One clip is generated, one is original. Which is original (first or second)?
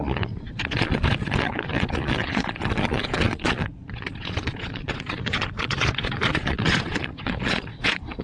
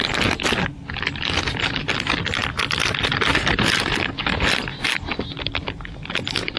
second